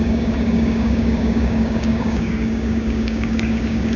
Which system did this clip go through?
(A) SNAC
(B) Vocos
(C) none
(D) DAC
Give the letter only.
D